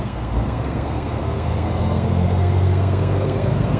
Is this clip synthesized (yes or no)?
yes